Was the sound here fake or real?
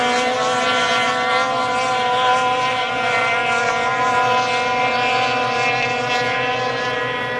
real